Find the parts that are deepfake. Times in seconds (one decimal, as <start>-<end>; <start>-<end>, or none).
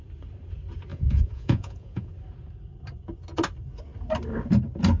0.9-2.1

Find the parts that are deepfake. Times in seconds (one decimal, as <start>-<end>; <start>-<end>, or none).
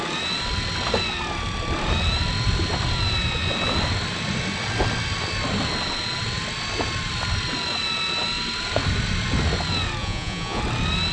10.0-10.6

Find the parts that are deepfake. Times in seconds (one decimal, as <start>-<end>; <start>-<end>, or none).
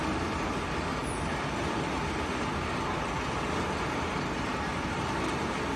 none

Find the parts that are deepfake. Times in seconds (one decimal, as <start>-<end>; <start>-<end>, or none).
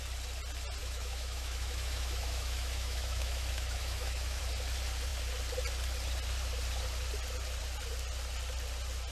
0.8-4.4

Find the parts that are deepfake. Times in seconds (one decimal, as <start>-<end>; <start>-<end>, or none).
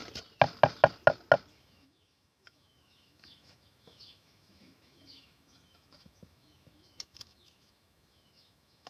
1.5-8.9